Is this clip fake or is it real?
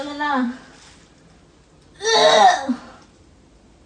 real